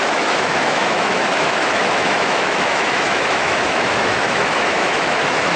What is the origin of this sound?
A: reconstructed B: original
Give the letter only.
A